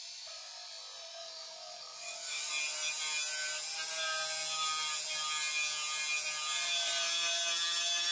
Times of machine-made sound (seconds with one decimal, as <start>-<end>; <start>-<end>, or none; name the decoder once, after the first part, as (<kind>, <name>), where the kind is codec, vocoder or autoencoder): 1.2-2.5 (codec, DAC)